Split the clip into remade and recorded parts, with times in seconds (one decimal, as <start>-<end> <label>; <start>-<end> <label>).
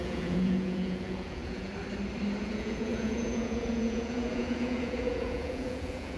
0.0-1.7 remade; 1.7-2.4 recorded; 2.4-6.2 remade